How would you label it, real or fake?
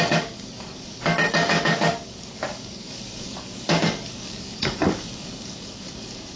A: fake